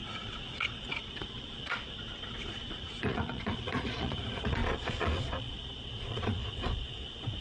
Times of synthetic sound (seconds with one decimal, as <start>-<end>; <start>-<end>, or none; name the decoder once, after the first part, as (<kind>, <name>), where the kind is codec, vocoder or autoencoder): 0.0-7.4 (vocoder, Vocos)